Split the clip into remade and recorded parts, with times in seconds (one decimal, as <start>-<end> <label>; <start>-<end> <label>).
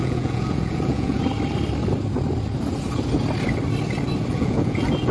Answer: 0.0-1.2 remade; 1.2-4.3 recorded; 4.3-5.1 remade